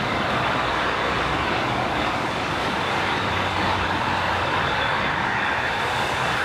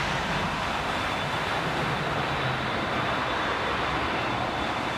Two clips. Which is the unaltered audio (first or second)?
second